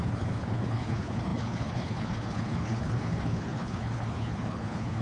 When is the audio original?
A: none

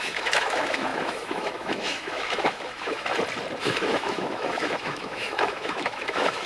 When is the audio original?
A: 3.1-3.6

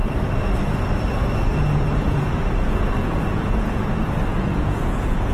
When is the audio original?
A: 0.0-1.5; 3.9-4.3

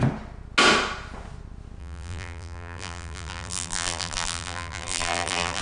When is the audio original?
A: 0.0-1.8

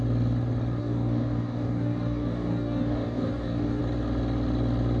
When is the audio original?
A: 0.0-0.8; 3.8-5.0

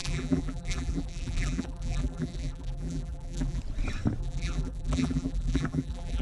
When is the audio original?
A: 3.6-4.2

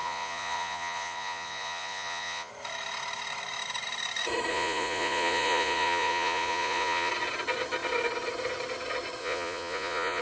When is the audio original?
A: 2.5-4.5; 7.1-9.2

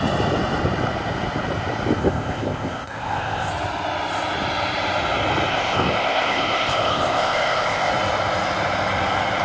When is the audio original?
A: 0.0-2.0; 3.5-5.5; 7.9-9.4